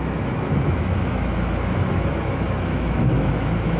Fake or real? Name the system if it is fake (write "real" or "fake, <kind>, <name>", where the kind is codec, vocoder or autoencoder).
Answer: fake, autoencoder, DAC-VAE